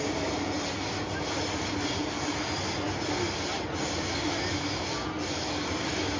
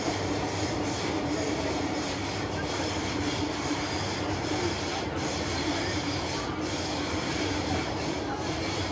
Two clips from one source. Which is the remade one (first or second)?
second